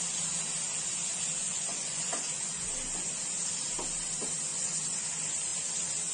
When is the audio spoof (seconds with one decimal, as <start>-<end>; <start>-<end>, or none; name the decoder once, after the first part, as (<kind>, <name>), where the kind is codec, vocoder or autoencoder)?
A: 1.4-3.1 (vocoder, Vocos); 4.5-5.0